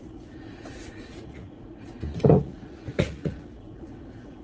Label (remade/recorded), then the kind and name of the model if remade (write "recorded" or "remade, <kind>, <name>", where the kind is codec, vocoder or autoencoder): remade, vocoder, Vocos